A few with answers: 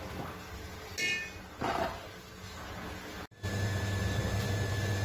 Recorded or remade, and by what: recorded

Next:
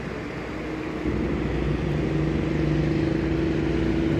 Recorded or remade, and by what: recorded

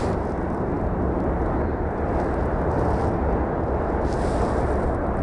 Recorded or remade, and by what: recorded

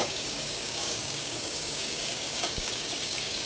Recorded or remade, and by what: remade, codec, DAC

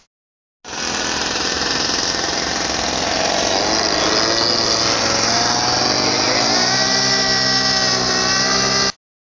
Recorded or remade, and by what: recorded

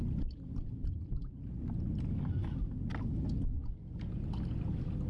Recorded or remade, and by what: recorded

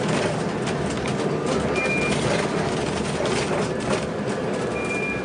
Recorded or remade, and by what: recorded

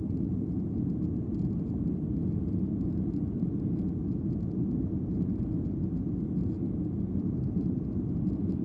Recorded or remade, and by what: recorded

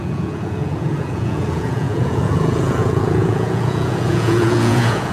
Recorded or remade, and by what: remade, vocoder, Vocos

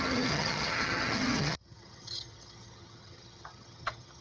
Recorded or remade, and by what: remade, vocoder, HiFi-GAN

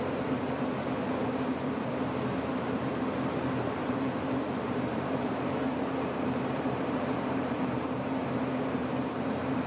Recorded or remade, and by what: remade, vocoder, BigVGAN v2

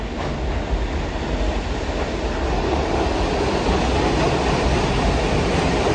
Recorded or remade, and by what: recorded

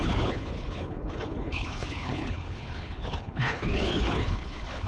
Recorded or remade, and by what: remade, codec, HILCodec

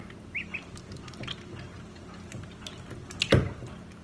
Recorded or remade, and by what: recorded